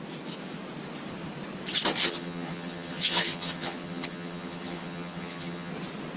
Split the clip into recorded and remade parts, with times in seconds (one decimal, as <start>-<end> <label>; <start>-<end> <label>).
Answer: 0.0-2.0 recorded; 2.0-5.7 remade; 5.7-6.2 recorded